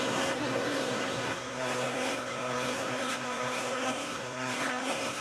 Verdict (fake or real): fake